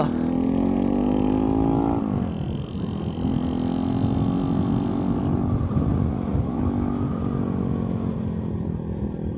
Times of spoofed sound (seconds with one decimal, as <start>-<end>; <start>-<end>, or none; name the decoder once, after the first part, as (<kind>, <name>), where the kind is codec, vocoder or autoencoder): 5.9-6.6 (vocoder, Vocos)